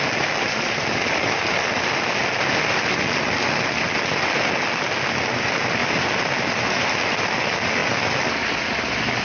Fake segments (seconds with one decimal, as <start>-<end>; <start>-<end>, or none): none